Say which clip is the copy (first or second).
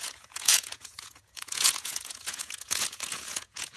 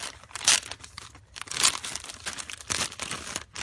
first